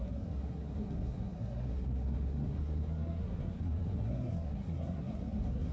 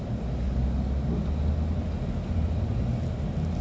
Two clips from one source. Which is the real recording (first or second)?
second